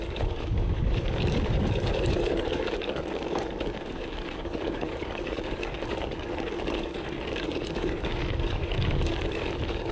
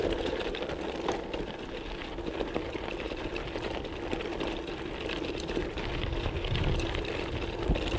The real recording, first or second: second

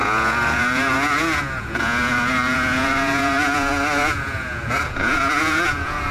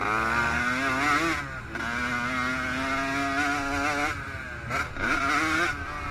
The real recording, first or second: second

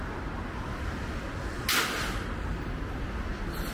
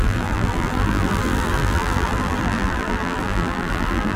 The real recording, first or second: first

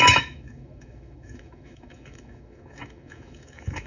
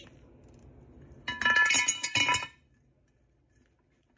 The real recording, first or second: second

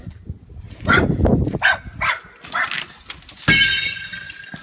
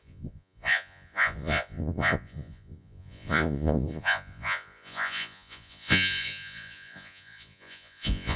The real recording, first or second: first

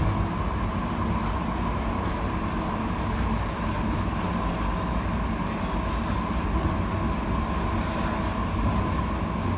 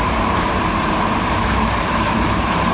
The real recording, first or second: first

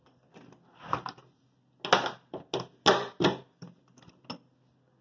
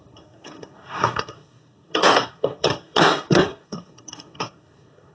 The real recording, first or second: first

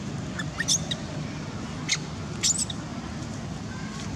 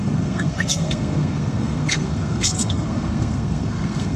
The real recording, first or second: first